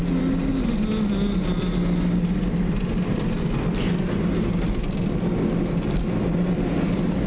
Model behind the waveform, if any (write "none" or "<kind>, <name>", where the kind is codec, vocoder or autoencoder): none